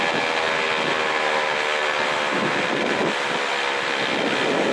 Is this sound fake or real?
real